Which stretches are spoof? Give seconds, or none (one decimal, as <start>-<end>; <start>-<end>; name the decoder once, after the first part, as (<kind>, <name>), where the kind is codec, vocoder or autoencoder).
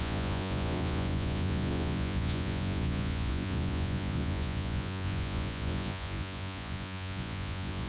0.0-7.9 (vocoder, Vocos)